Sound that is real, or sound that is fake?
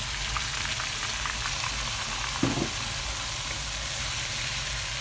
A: real